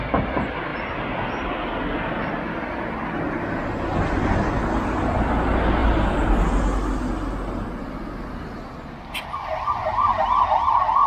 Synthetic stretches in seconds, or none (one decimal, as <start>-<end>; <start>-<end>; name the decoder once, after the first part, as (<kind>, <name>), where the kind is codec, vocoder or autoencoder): 5.8-6.5 (vocoder, BigVGAN v2); 9.8-10.4